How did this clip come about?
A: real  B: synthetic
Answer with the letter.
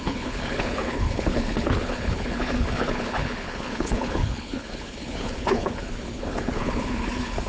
B